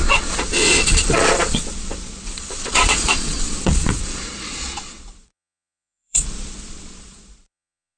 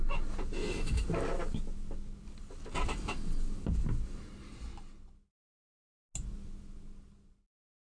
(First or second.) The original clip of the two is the second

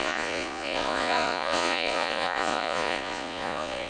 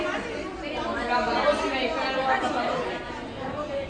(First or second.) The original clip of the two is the second